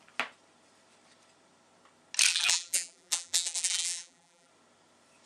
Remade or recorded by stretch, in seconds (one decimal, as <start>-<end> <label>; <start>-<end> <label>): 0.0-2.3 recorded; 2.3-4.5 remade; 4.5-5.3 recorded